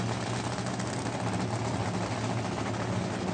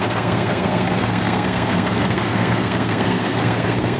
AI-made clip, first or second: second